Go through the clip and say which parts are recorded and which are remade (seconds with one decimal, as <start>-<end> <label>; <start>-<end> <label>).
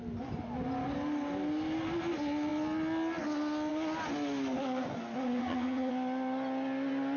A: 0.0-5.4 recorded; 5.4-5.9 remade; 5.9-7.2 recorded